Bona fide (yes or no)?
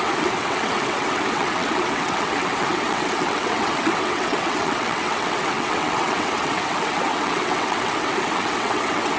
no